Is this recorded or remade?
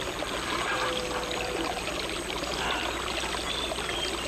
recorded